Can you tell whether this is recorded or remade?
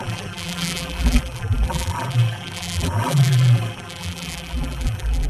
remade